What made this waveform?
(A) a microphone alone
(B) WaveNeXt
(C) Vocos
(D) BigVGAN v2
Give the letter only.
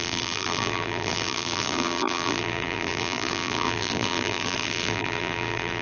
D